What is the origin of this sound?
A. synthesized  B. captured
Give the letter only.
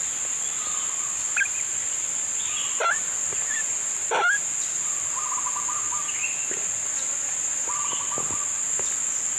B